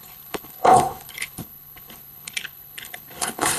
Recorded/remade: remade